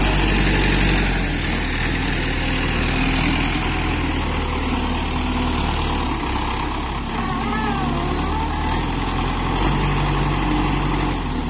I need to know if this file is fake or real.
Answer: real